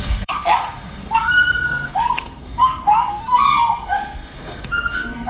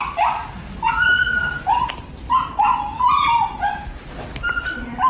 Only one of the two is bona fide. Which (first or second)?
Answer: second